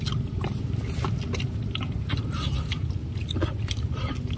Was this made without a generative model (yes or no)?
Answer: yes